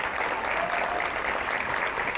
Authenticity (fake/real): real